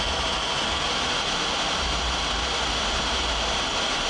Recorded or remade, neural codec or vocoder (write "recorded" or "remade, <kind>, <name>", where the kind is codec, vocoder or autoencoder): recorded